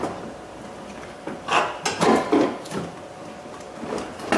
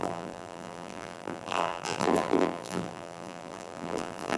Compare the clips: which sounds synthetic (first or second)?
second